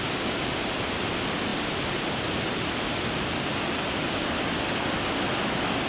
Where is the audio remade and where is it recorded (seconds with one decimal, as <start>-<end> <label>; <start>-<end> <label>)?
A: 0.0-5.9 recorded